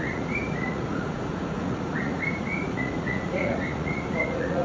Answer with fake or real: fake